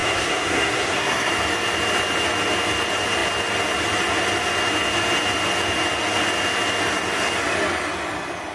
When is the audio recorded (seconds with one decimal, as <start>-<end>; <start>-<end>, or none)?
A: 1.3-8.5